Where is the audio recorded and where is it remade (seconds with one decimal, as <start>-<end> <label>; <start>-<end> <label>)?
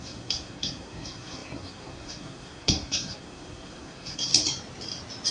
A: 0.0-4.3 remade; 4.3-5.3 recorded